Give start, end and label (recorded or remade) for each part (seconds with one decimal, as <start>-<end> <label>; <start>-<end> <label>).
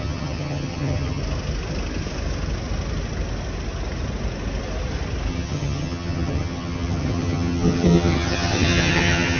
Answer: 0.0-1.2 remade; 1.2-5.3 recorded; 5.3-9.4 remade